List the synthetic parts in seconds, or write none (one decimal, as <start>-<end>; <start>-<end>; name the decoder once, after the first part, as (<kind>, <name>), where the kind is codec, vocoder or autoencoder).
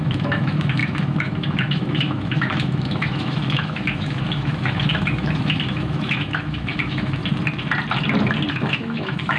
0.0-7.2 (autoencoder, DAC-VAE); 8.5-9.4